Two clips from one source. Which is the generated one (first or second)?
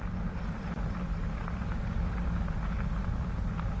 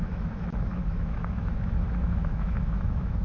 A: second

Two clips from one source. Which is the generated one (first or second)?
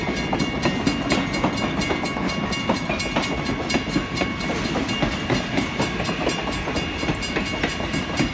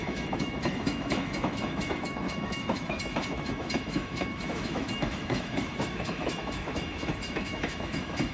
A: second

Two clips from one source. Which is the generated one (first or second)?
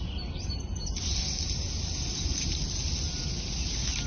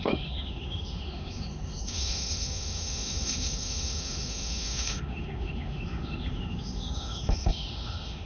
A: second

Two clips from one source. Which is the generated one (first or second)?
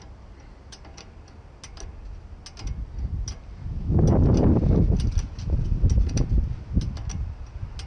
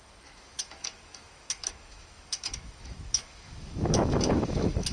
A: second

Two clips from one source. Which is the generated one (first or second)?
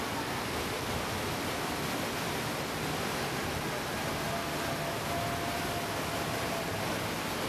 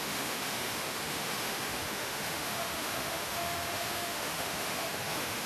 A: second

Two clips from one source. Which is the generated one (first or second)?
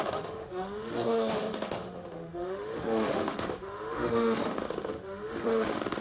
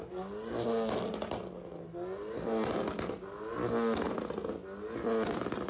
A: first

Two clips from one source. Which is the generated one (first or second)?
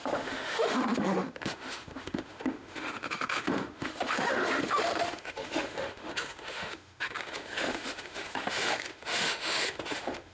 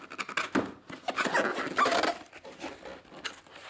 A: first